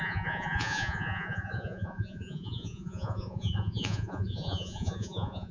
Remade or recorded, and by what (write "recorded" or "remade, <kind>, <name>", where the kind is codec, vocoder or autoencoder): remade, vocoder, Vocos